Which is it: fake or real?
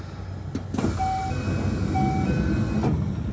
real